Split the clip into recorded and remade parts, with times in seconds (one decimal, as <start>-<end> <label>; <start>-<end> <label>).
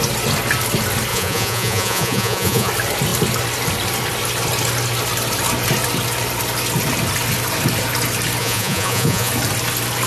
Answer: 0.0-1.1 recorded; 1.1-2.7 remade; 2.7-8.4 recorded; 8.4-9.3 remade; 9.3-10.1 recorded